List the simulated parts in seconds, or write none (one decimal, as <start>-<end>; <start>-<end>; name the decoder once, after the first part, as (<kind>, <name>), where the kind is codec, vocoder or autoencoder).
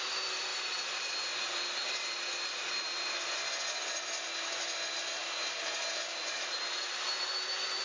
none